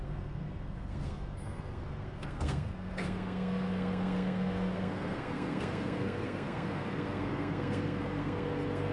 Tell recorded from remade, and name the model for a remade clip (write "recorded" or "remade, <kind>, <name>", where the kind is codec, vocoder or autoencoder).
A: remade, codec, SNAC